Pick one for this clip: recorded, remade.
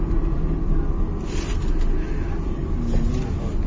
recorded